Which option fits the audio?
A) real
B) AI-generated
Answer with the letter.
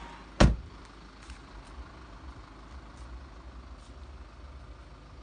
A